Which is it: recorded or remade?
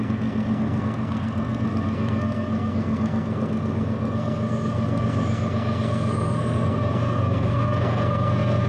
remade